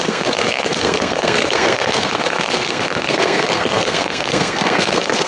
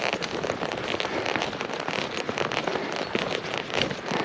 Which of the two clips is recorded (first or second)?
second